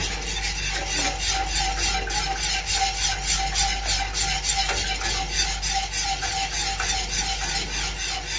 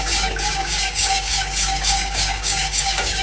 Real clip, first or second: first